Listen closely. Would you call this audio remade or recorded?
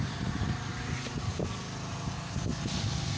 recorded